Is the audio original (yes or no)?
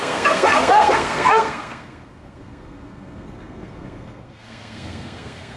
no